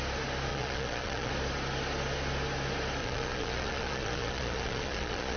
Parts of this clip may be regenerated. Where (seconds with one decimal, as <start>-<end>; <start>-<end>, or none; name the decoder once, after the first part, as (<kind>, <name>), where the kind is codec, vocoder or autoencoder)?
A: 0.5-1.3 (vocoder, Vocos); 3.0-5.4